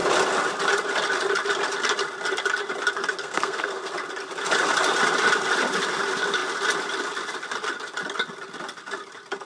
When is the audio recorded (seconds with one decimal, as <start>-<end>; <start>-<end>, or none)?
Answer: 0.0-3.2; 3.9-9.5